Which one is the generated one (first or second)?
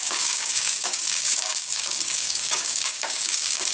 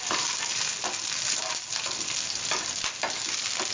first